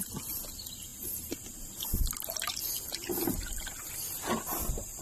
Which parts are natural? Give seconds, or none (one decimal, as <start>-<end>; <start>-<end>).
0.0-5.0